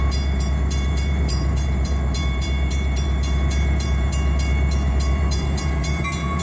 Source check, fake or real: fake